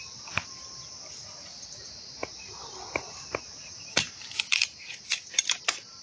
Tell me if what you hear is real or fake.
fake